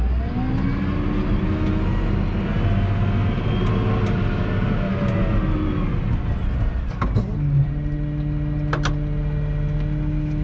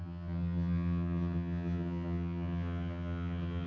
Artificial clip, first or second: second